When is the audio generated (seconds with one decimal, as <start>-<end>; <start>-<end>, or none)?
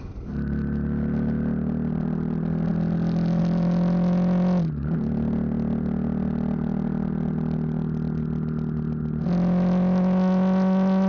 none